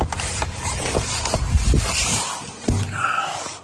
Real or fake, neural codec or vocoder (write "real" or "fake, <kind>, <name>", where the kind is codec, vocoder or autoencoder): real